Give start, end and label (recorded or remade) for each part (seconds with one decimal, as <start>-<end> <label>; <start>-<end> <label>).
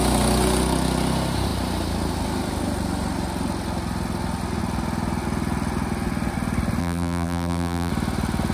0.0-6.8 recorded; 6.8-7.9 remade; 7.9-8.5 recorded